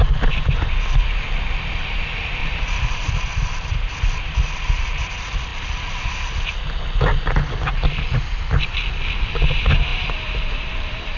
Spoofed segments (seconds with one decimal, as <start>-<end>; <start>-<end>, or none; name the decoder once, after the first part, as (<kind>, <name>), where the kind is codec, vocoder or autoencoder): 2.4-3.2 (vocoder, BigVGAN v2); 9.9-11.2